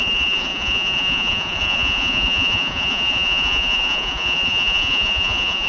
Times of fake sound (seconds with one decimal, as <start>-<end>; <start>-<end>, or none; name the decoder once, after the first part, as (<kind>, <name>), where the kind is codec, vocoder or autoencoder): 0.0-5.7 (vocoder, Vocos)